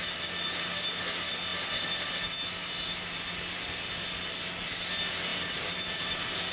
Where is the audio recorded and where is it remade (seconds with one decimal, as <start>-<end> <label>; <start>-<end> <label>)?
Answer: 0.0-5.3 recorded; 5.3-6.5 remade